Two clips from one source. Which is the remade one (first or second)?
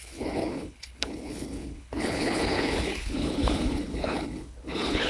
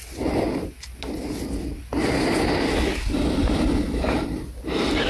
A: first